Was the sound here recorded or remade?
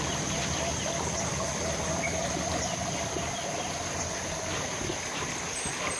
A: recorded